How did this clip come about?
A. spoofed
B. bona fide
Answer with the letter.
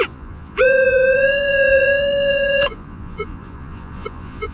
A